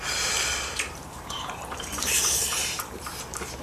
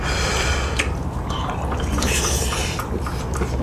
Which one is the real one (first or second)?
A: second